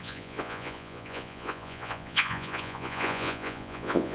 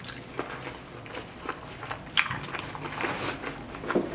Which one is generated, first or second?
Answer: first